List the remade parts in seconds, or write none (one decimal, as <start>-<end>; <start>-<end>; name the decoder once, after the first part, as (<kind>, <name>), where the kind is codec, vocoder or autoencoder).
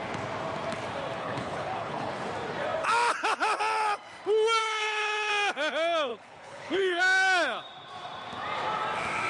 1.2-2.1 (codec, HILCodec); 4.6-5.3; 6.1-7.0